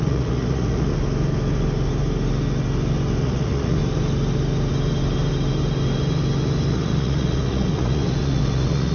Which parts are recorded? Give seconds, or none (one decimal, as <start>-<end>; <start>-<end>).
0.9-3.2; 3.8-6.7